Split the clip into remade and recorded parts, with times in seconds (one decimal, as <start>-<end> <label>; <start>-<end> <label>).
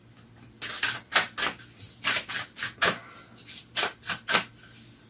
0.0-5.1 recorded